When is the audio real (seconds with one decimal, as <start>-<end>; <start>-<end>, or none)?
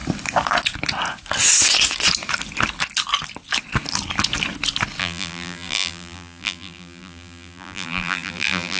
0.0-5.0